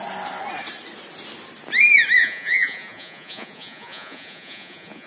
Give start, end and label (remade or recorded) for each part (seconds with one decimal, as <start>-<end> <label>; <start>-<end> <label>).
0.0-2.2 recorded; 2.2-5.1 remade